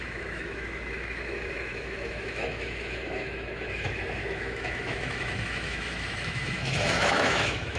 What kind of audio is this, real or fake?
fake